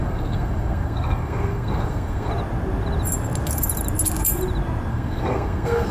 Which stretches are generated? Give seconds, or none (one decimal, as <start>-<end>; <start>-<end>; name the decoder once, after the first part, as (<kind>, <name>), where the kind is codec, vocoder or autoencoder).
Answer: 0.0-2.3 (codec, SNAC); 4.9-5.9